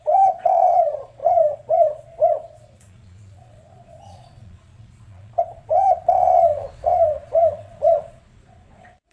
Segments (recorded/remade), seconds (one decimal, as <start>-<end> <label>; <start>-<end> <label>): 0.0-9.1 remade